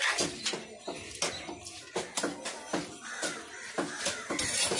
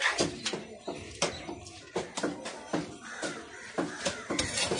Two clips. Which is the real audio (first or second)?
first